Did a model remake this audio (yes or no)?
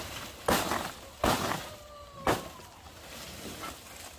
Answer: no